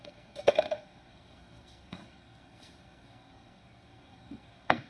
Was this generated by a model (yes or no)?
yes